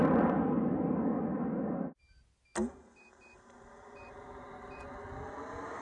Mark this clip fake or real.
real